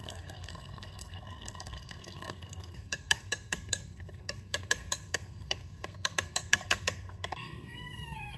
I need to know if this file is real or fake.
fake